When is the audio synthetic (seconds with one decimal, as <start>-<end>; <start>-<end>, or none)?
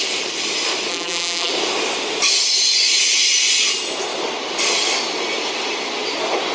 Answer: 0.9-1.5